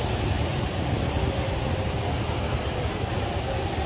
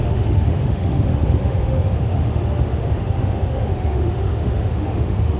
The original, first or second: first